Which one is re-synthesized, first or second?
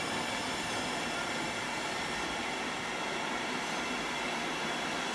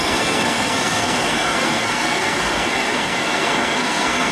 second